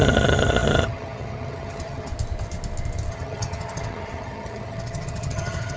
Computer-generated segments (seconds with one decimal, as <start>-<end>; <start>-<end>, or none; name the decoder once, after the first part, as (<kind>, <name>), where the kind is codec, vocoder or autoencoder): 0.0-2.1 (vocoder, HiFi-GAN); 3.1-5.8